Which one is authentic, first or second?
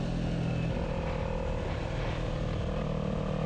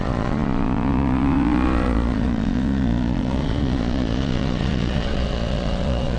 first